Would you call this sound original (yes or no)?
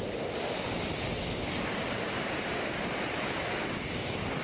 yes